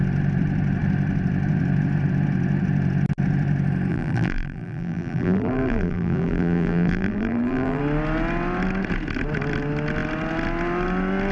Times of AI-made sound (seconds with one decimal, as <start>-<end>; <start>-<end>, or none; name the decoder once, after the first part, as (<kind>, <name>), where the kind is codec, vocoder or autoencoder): 3.9-7.8 (vocoder, BigVGAN v2)